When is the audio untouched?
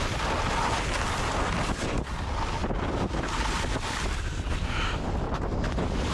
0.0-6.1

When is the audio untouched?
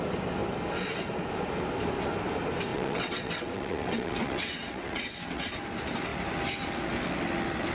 0.0-2.7; 5.5-7.7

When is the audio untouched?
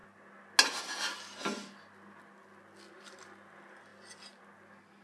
0.0-5.0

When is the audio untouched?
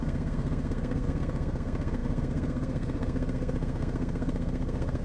none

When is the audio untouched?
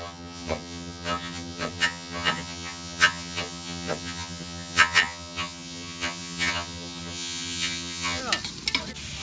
8.2-9.2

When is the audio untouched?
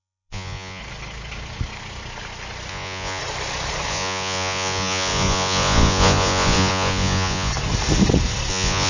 0.8-2.7; 3.2-3.9; 7.5-8.5